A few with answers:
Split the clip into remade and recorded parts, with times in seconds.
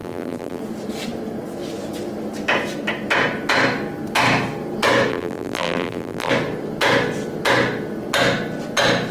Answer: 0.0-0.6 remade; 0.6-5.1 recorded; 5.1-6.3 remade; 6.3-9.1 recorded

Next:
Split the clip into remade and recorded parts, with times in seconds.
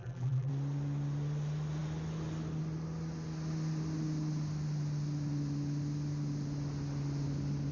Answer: 0.0-0.5 remade; 0.5-7.7 recorded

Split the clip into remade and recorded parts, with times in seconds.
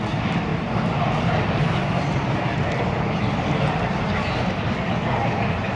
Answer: 0.0-5.8 remade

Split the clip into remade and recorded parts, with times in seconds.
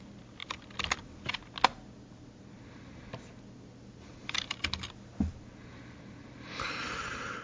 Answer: 0.0-7.4 recorded